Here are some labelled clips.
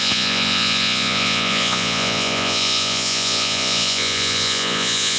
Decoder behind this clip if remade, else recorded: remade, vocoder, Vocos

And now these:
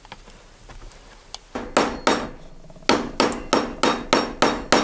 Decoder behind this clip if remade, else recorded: recorded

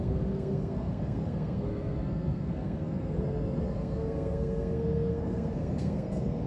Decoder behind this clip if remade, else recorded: remade, codec, SNAC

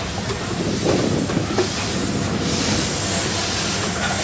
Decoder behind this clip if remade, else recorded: recorded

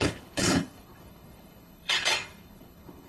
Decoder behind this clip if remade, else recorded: remade, codec, HILCodec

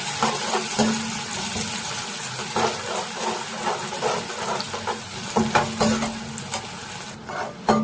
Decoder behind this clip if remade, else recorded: recorded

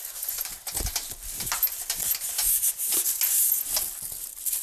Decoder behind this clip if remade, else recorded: recorded